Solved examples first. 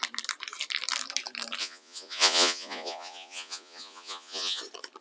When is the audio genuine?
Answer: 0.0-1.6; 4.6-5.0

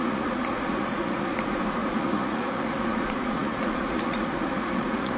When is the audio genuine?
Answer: none

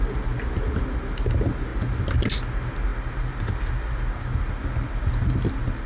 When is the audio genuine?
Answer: 0.0-5.9

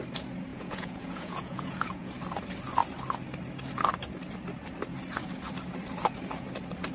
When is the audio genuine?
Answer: 0.0-0.5; 2.1-6.9

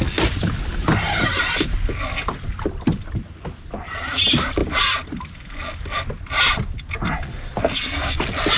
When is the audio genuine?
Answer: 0.0-8.6

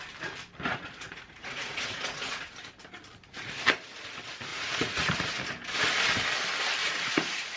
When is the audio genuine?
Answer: 0.0-0.7; 2.5-4.5; 5.1-6.8

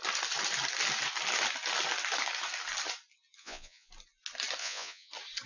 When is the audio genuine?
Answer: 0.0-3.4; 3.9-4.6; 5.1-5.5